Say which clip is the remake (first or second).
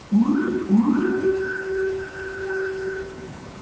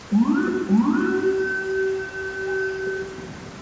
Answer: first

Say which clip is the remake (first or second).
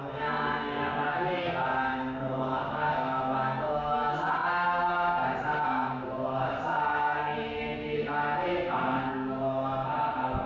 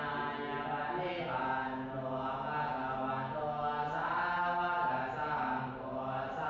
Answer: first